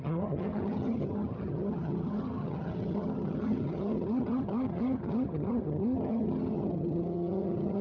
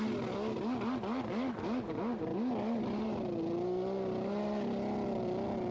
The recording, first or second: second